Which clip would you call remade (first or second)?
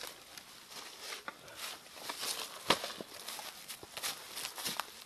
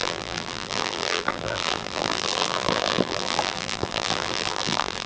second